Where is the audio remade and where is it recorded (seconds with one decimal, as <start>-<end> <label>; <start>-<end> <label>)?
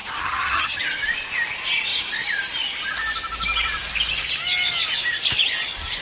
0.0-0.8 remade; 0.8-6.0 recorded